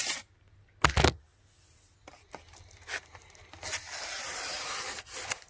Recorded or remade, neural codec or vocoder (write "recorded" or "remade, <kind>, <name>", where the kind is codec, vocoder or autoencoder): recorded